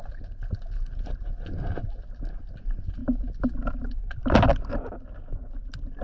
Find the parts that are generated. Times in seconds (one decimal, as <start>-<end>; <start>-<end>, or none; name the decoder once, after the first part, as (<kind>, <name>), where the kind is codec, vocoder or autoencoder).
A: 3.0-6.0 (vocoder, BigVGAN v2)